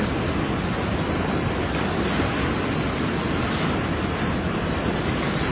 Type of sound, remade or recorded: recorded